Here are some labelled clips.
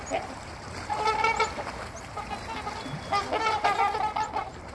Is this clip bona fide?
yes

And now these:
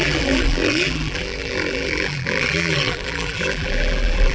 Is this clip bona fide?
no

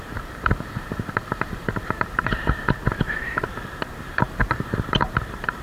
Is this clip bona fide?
no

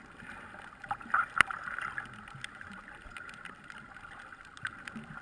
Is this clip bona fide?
yes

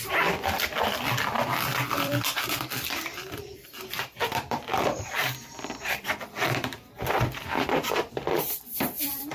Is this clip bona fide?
no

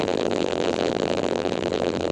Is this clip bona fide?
no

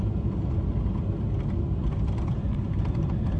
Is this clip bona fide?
yes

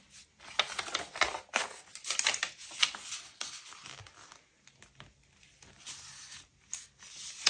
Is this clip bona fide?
yes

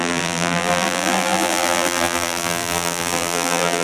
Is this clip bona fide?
no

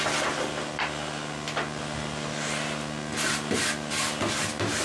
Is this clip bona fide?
yes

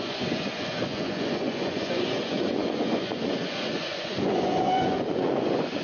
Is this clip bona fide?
no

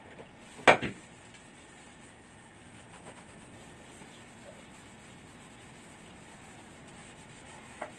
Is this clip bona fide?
yes